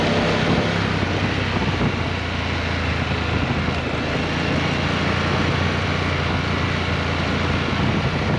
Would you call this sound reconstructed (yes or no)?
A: no